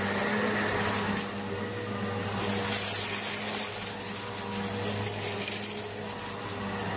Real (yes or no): yes